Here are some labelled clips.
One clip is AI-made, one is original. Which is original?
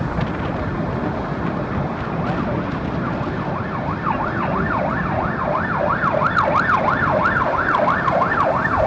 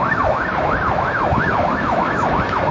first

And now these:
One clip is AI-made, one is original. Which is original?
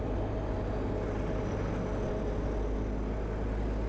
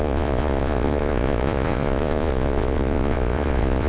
first